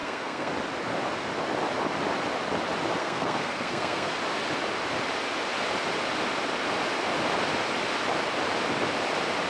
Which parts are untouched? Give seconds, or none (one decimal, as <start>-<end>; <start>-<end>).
0.5-3.0; 4.1-9.5